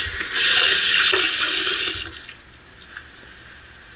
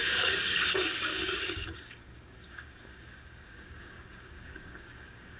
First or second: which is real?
first